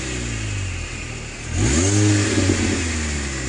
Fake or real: real